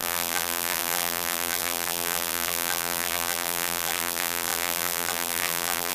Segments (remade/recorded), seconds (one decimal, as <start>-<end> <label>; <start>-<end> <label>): 0.0-5.9 remade